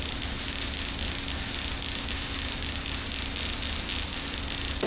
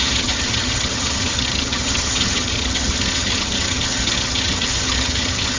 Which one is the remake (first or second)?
second